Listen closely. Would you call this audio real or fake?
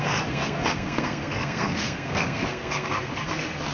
fake